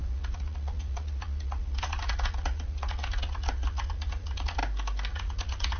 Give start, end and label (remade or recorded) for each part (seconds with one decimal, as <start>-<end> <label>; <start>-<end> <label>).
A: 0.0-4.6 remade; 4.6-5.1 recorded; 5.1-5.8 remade